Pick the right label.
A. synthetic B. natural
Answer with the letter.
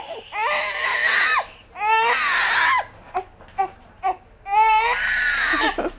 B